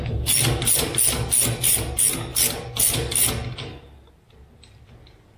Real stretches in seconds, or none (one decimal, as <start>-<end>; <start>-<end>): 0.0-5.4